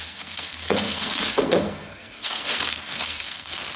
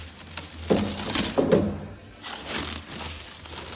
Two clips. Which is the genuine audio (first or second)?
second